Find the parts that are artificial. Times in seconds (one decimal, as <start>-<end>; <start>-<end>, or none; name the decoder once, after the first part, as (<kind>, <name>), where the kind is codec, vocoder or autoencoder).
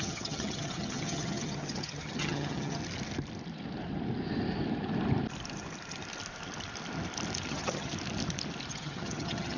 0.0-2.8 (vocoder, HiFi-GAN); 7.5-7.9; 8.7-9.6